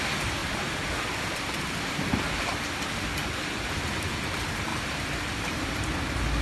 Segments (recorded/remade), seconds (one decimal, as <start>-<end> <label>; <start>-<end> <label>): 0.0-0.4 recorded; 0.4-4.0 remade; 4.0-4.7 recorded; 4.7-5.8 remade; 5.8-6.4 recorded